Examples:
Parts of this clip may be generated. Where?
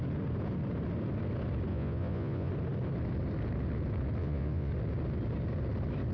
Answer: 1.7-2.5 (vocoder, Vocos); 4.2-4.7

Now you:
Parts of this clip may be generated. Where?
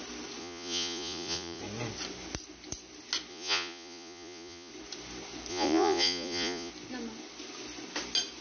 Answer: 0.4-1.6 (vocoder, Vocos); 3.3-4.7; 5.5-6.7